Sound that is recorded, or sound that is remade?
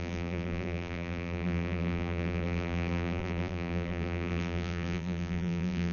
remade